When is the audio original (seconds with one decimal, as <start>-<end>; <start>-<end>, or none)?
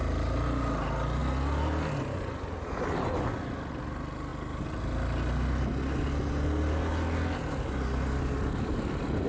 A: 0.0-9.3